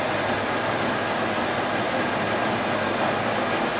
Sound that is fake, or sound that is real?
real